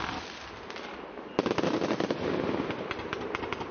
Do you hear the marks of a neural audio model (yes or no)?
no